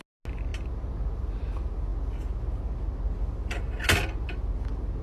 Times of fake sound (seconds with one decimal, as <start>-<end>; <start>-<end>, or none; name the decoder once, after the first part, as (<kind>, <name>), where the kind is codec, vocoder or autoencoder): none